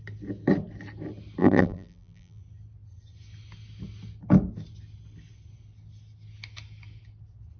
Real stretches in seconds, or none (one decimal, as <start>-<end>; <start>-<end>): 0.0-1.4; 2.4-7.6